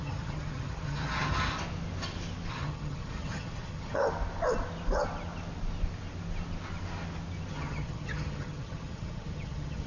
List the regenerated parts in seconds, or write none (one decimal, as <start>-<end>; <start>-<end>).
0.0-1.5; 2.5-4.0; 7.5-9.9